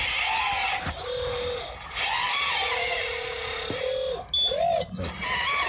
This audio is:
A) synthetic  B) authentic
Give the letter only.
B